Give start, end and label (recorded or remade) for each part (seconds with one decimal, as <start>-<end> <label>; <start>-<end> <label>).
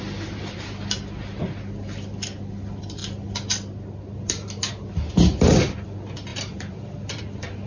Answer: 0.0-6.3 recorded; 6.3-7.2 remade; 7.2-7.7 recorded